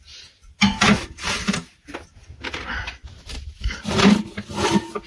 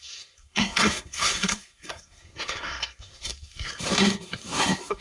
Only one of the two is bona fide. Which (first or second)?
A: first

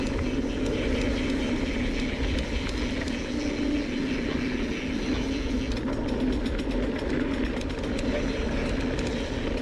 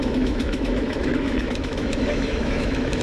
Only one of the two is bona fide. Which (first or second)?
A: first